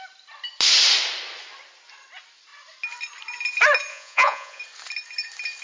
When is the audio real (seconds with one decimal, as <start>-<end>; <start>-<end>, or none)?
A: 0.0-3.9; 4.6-5.6